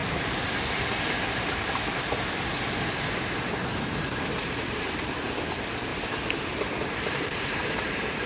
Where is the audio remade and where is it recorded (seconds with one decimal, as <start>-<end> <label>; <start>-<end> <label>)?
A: 0.0-0.5 remade; 0.5-3.7 recorded; 3.7-5.1 remade; 5.1-5.9 recorded; 5.9-7.4 remade; 7.4-8.2 recorded